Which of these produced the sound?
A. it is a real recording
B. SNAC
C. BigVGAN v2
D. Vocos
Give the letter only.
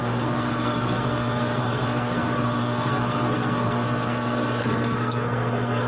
B